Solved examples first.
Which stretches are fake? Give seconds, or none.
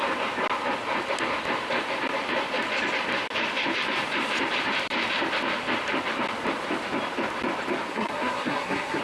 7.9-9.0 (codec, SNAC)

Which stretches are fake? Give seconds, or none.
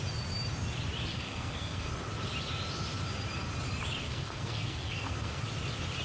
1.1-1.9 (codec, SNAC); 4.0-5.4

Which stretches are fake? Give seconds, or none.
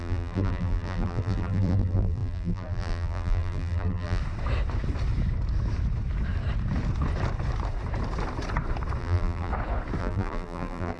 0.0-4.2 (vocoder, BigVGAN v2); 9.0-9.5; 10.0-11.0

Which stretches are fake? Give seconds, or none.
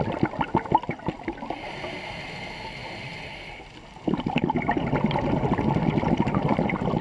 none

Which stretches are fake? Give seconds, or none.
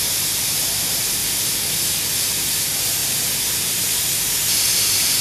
0.0-1.2 (vocoder, BigVGAN v2); 2.2-3.0; 3.7-5.2